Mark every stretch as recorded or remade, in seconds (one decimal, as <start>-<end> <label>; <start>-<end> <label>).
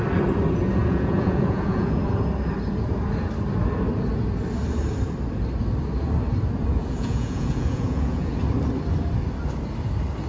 0.0-0.8 recorded; 0.8-2.0 remade; 2.0-6.7 recorded; 6.7-8.3 remade; 8.3-10.3 recorded